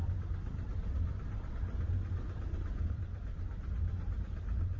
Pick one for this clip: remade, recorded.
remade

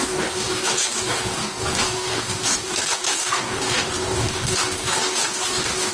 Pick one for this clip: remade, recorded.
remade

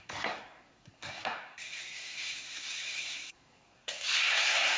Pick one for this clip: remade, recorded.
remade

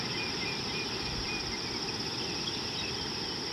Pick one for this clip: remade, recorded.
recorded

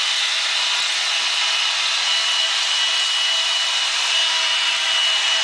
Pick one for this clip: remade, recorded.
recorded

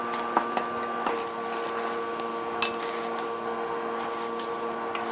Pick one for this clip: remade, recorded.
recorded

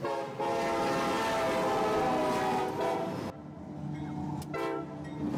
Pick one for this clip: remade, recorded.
recorded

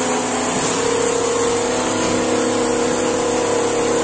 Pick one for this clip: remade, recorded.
recorded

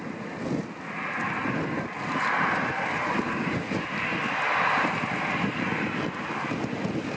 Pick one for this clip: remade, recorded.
recorded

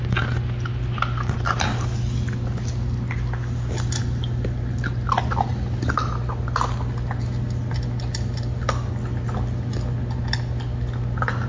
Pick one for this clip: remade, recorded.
recorded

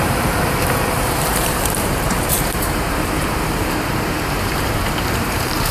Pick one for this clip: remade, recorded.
remade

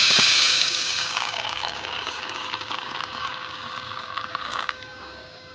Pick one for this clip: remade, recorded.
remade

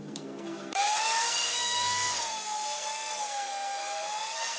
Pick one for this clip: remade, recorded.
remade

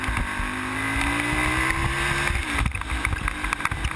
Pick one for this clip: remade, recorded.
recorded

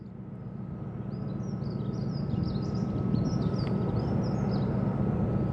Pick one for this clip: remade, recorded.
recorded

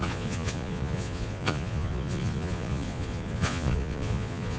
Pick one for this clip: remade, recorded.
remade